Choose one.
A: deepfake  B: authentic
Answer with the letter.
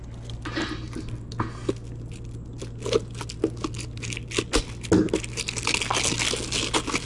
B